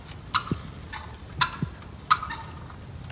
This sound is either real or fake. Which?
real